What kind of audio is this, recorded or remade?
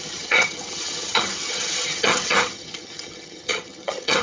remade